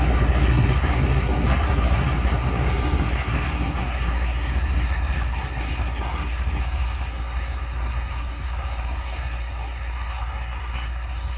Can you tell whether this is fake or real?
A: fake